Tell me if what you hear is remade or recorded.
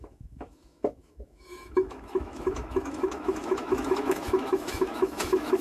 remade